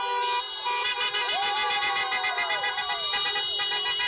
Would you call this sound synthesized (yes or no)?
no